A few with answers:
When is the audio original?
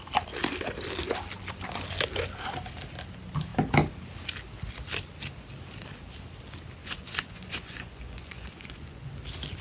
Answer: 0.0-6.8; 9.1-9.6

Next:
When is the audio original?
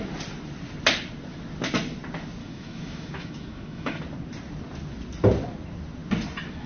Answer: 0.0-2.4; 4.0-6.7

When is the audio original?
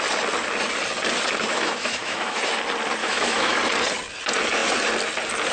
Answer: 0.0-1.5; 2.4-3.0; 3.6-5.5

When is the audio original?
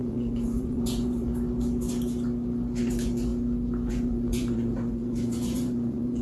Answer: 1.3-2.8; 3.3-3.9